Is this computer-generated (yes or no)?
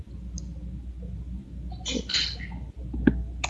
no